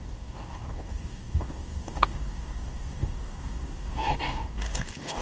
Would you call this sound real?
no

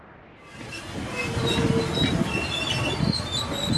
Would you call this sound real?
yes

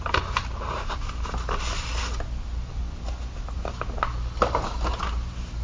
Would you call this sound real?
yes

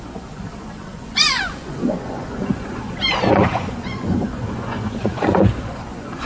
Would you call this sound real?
no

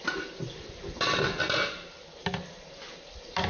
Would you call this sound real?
yes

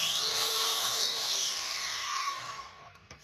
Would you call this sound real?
no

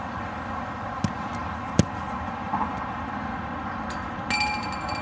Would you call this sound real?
yes